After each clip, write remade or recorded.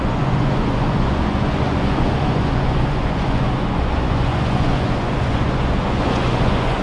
remade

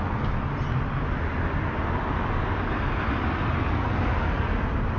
recorded